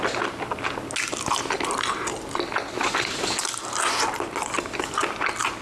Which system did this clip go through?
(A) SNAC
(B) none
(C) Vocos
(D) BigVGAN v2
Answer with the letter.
B